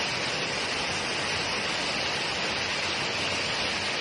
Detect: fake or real real